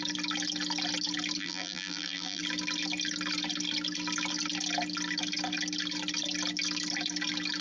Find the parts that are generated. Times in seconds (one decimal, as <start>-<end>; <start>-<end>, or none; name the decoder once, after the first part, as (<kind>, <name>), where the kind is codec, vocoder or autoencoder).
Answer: 1.4-2.4 (vocoder, BigVGAN v2)

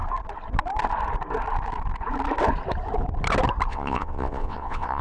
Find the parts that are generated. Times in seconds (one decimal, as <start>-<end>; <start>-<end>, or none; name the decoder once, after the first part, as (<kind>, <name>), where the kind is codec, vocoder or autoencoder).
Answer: 3.7-5.0 (vocoder, WaveNeXt)

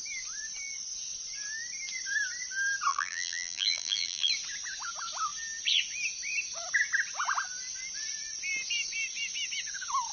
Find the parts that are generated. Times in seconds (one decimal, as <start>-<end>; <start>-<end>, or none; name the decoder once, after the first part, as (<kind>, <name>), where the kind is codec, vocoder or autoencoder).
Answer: 2.9-4.3 (vocoder, BigVGAN v2)

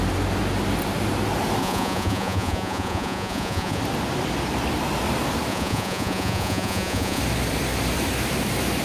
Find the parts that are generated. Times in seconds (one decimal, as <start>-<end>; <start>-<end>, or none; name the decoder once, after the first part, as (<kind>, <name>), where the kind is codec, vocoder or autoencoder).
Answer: 1.6-3.8 (vocoder, Vocos); 5.5-7.2

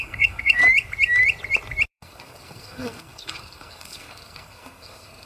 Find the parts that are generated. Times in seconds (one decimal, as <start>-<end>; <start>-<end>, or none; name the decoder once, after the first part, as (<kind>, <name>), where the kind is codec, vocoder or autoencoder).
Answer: 0.0-0.6 (codec, SNAC); 1.9-5.3

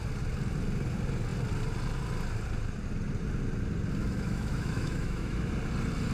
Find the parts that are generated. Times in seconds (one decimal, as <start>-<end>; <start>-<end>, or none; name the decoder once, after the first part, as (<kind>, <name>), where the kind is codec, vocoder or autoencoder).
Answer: 4.0-5.5 (autoencoder, DAC-VAE)

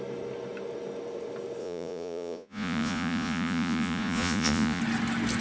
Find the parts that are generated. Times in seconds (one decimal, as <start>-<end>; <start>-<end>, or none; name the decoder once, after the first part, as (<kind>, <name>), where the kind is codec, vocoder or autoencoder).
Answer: 1.6-4.8 (vocoder, Vocos)